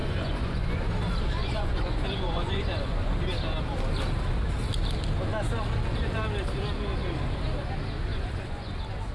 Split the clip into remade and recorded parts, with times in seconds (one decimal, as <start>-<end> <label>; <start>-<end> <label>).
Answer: 0.0-0.8 remade; 0.8-1.4 recorded; 1.4-3.1 remade; 3.1-8.1 recorded; 8.1-8.7 remade; 8.7-9.1 recorded